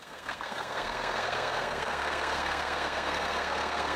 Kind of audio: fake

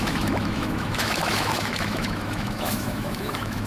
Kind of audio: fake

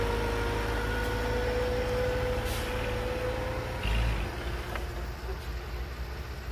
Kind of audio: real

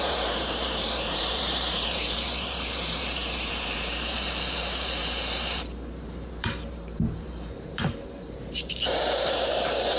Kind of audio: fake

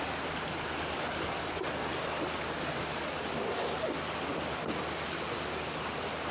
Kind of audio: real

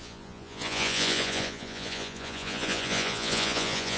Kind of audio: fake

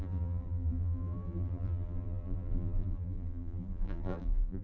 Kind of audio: fake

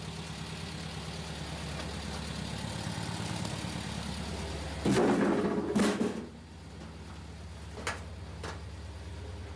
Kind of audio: real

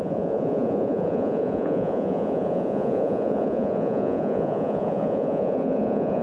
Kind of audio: fake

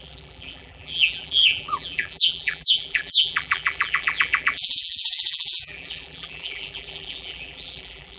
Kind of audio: fake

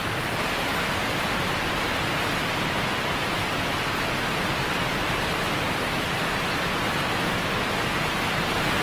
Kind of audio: real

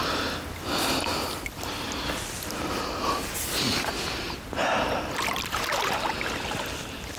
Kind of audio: real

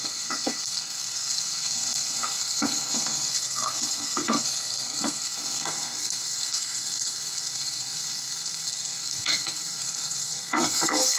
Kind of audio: fake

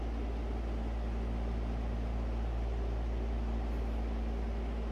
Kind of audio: real